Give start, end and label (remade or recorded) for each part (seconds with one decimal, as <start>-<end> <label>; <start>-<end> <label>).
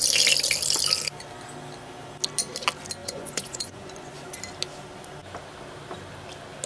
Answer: 0.0-3.0 recorded; 3.0-4.3 remade; 4.3-6.7 recorded